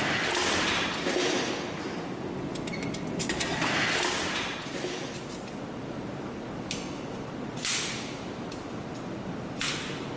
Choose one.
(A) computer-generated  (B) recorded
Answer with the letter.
B